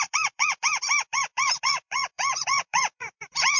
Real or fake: fake